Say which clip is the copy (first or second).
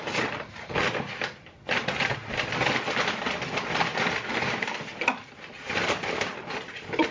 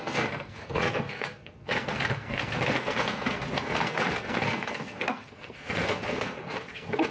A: second